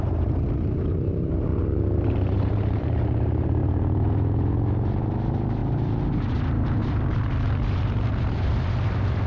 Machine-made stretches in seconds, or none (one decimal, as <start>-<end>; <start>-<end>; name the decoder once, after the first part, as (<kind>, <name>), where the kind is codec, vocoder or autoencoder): 0.0-1.5 (vocoder, BigVGAN v2); 2.0-3.6; 5.0-9.3